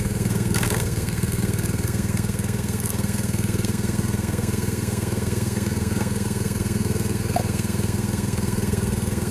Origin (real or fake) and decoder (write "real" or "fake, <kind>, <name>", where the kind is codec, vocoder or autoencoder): fake, codec, SNAC